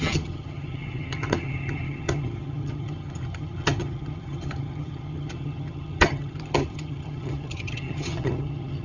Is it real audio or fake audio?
fake